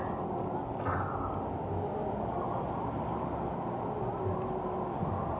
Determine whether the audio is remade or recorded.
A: recorded